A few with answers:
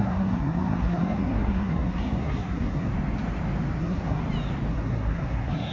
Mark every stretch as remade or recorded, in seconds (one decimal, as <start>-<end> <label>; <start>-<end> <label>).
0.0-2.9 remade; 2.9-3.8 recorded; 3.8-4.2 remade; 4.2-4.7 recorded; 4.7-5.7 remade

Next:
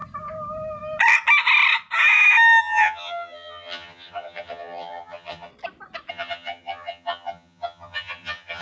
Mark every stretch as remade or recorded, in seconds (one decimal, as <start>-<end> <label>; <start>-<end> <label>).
0.0-2.6 recorded; 2.6-5.5 remade; 5.5-6.1 recorded; 6.1-8.6 remade

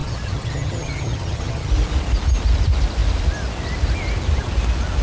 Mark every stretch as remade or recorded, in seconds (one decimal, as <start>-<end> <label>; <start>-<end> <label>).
0.0-1.7 remade; 1.7-5.0 recorded

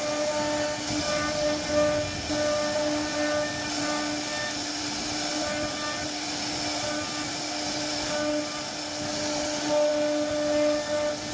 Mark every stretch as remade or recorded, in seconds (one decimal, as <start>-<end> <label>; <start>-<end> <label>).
0.0-11.3 recorded

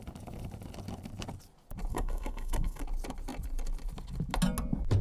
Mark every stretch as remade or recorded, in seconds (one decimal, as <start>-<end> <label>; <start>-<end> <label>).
0.0-1.9 recorded; 1.9-2.8 remade; 2.8-5.0 recorded